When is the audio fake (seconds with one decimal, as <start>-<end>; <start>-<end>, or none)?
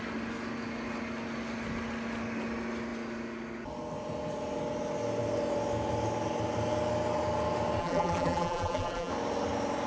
7.8-9.1